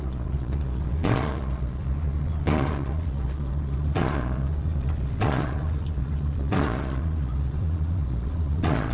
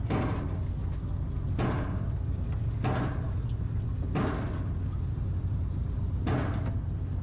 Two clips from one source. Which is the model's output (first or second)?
first